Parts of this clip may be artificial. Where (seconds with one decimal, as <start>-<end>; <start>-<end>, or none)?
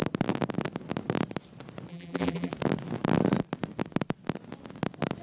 1.9-2.5